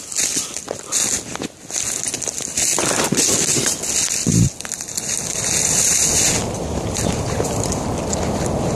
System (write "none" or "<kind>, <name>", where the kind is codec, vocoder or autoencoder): none